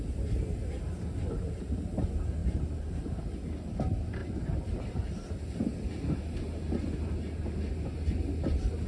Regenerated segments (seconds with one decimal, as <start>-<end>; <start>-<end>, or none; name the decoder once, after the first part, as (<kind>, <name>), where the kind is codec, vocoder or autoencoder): 1.2-2.0 (vocoder, BigVGAN v2); 2.4-3.2; 4.2-4.8